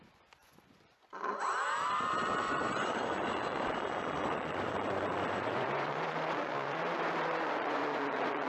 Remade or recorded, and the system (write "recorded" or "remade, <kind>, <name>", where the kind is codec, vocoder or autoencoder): remade, vocoder, Vocos